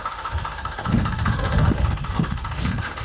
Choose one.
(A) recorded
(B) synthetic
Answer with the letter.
B